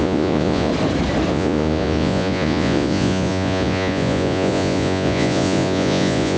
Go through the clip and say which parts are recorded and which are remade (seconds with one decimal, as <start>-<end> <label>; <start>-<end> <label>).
0.0-0.7 remade; 0.7-1.3 recorded; 1.3-6.4 remade